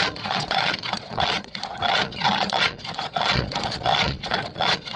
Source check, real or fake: fake